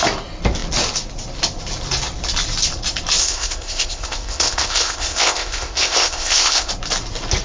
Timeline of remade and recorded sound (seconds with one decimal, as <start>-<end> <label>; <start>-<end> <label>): 0.0-3.2 recorded; 3.2-6.7 remade; 6.7-7.4 recorded